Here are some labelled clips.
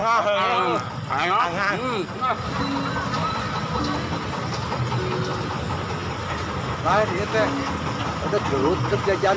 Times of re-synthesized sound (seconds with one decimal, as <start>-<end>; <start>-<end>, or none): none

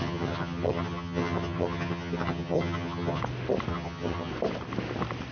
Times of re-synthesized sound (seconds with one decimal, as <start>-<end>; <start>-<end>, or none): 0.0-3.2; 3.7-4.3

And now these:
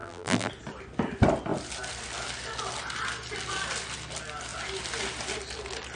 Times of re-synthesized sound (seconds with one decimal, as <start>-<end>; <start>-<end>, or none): 0.0-0.5

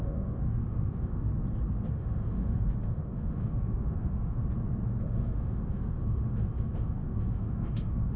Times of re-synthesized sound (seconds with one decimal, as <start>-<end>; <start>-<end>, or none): 0.0-1.3; 1.9-4.4; 5.0-8.2